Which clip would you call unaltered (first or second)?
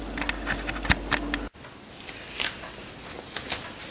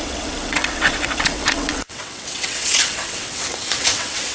first